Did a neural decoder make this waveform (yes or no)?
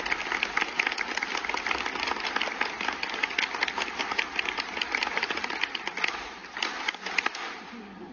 no